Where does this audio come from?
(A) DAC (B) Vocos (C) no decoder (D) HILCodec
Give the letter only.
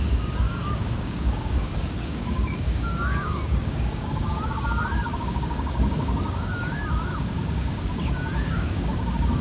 A